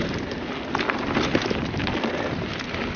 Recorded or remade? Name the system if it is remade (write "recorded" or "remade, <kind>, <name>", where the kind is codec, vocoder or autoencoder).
recorded